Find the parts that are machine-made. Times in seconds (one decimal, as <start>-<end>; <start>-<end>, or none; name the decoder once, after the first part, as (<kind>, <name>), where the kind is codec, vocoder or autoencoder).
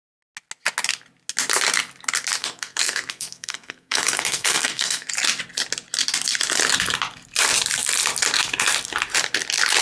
2.4-5.1 (codec, SNAC)